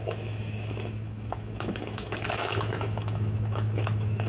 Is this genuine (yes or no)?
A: no